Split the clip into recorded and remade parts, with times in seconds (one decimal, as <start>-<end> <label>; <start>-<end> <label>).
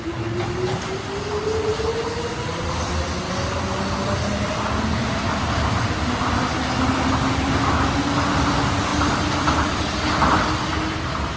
0.0-11.4 recorded